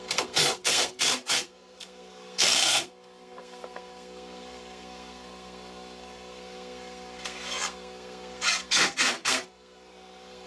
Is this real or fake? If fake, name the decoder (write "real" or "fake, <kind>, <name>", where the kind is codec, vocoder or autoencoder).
fake, codec, SNAC